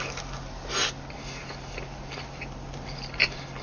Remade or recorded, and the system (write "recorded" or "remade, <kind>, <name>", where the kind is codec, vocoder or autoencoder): recorded